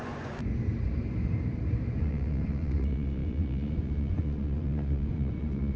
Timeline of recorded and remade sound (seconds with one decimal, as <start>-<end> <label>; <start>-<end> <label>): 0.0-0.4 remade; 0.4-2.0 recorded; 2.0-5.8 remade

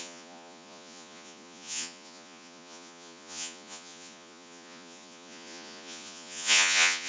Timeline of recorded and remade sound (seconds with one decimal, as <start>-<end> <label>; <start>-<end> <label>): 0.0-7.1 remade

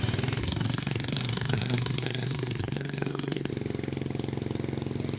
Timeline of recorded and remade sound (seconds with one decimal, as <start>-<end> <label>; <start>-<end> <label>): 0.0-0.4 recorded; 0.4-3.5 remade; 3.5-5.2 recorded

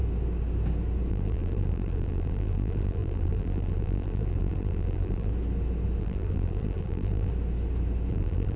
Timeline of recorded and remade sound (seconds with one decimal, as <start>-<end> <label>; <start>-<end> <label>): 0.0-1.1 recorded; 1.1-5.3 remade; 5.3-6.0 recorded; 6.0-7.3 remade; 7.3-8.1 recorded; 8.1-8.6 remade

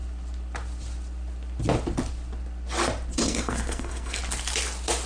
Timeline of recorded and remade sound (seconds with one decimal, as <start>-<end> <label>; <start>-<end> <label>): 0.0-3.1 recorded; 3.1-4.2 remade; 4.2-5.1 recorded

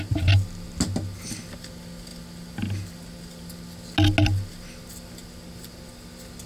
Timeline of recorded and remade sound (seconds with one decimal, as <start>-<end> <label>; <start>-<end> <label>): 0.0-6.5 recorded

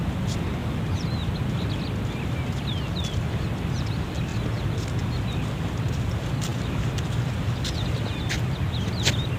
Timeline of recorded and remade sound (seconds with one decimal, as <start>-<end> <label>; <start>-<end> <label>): 0.0-9.4 recorded